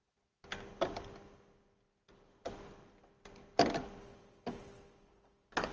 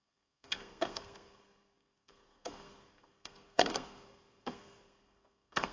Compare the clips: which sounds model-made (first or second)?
second